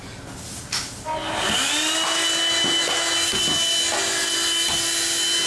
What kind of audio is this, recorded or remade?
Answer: recorded